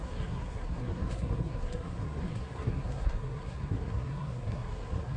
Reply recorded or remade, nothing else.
remade